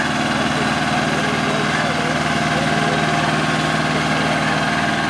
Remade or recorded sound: recorded